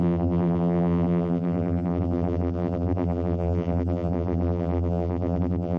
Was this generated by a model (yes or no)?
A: yes